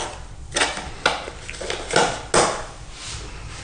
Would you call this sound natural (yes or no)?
yes